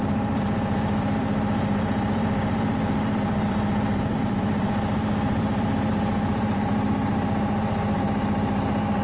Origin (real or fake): fake